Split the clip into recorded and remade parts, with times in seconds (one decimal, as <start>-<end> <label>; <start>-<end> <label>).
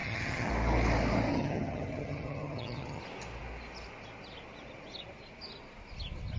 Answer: 0.0-0.5 remade; 0.5-1.3 recorded; 1.3-3.0 remade; 3.0-6.4 recorded